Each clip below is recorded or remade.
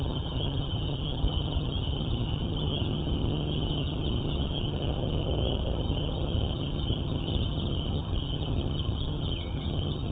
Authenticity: remade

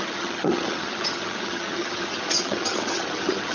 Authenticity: remade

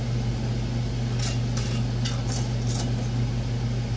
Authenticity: recorded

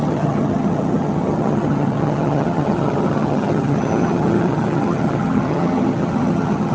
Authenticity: remade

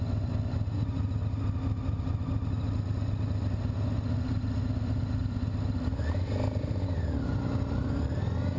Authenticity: recorded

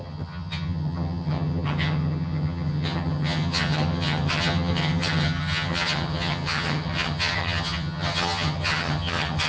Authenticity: remade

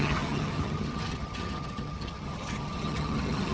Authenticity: remade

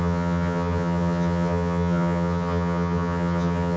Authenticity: remade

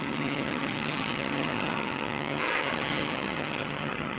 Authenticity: remade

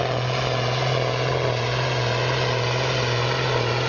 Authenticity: recorded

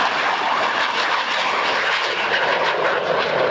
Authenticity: recorded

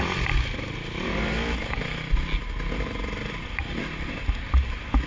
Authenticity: recorded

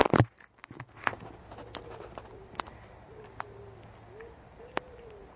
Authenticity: recorded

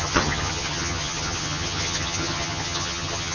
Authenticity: remade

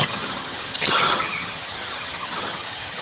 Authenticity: remade